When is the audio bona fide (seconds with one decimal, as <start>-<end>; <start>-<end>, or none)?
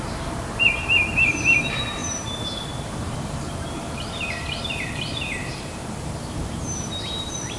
none